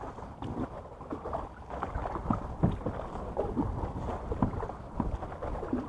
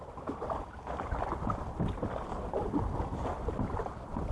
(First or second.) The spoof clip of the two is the second